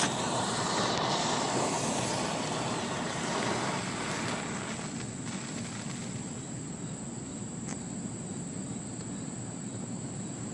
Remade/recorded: recorded